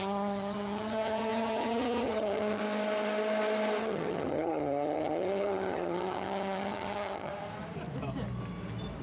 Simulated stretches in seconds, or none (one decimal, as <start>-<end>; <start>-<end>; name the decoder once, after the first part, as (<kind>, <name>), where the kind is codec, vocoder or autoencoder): 0.0-2.6 (vocoder, HiFi-GAN); 3.8-7.3